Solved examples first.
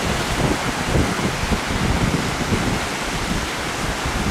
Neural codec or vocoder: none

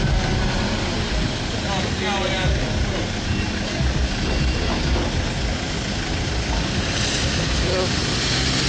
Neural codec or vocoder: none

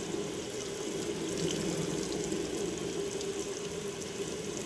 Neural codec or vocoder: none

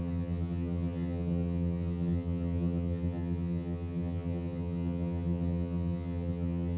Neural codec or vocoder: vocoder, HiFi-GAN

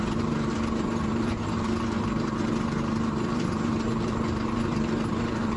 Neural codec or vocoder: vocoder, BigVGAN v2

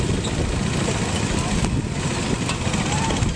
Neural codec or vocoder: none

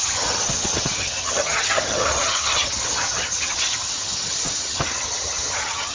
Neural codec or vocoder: vocoder, HiFi-GAN